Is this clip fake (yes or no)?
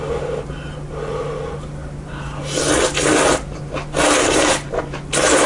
no